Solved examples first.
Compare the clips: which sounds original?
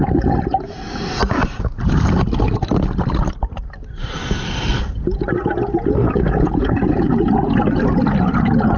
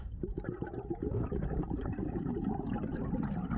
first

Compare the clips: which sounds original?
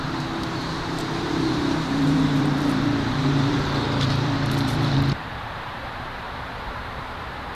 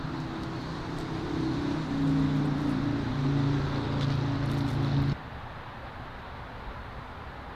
second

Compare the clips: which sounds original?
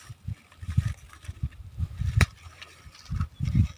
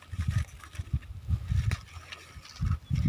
second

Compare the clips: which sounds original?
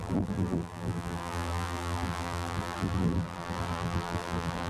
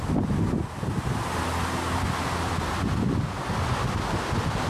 second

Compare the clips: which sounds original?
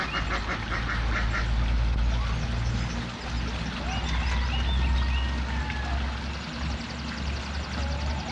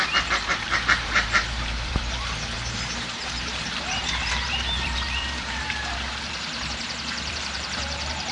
first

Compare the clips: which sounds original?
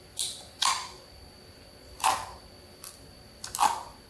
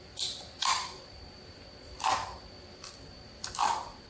first